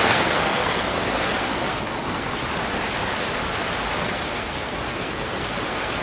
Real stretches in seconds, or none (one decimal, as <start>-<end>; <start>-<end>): 2.4-4.0